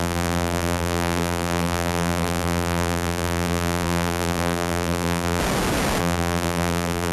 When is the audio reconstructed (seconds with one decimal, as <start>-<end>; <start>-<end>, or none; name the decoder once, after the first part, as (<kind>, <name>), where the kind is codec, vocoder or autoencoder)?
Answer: 0.0-5.4 (vocoder, BigVGAN v2); 6.0-7.1